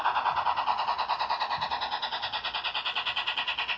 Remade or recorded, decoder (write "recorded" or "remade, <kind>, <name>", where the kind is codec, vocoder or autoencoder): recorded